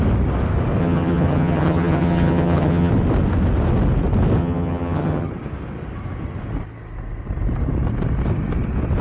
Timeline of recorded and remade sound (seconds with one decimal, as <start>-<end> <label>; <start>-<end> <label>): 0.0-0.8 recorded; 0.8-2.9 remade; 2.9-4.4 recorded; 4.4-5.3 remade; 5.3-9.0 recorded